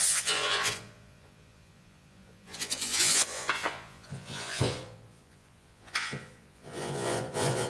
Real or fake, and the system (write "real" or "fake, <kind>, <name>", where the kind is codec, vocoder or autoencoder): fake, vocoder, Vocos